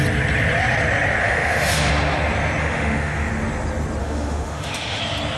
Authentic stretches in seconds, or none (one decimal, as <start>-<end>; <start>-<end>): 0.0-1.2; 1.9-2.6; 3.3-4.0; 5.0-5.4